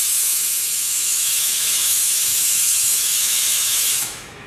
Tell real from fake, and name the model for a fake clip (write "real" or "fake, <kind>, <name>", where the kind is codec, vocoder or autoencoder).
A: fake, autoencoder, DAC-VAE